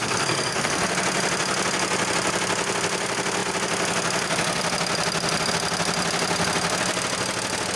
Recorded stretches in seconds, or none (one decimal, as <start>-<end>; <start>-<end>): 0.8-7.8